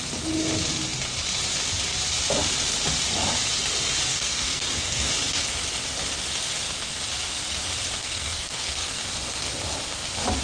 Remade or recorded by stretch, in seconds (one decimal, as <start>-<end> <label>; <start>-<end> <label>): 0.0-4.1 recorded; 4.1-5.1 remade; 5.1-8.0 recorded; 8.0-9.0 remade; 9.0-10.4 recorded